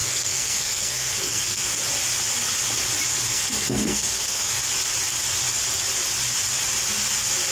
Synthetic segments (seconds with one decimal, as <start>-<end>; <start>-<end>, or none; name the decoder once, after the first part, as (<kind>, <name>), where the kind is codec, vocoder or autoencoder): 0.0-1.8 (codec, SNAC); 3.3-4.6